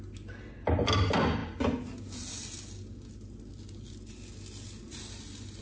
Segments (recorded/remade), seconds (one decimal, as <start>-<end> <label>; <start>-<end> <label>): 0.0-5.6 recorded

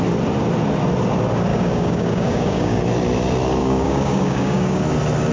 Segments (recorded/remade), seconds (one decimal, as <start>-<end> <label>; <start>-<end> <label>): 0.0-1.5 recorded; 1.5-2.8 remade; 2.8-3.6 recorded; 3.6-4.8 remade; 4.8-5.3 recorded